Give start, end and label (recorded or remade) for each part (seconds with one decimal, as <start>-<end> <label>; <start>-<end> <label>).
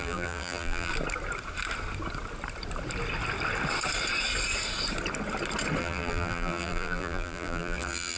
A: 0.0-0.9 remade; 0.9-5.8 recorded; 5.8-8.2 remade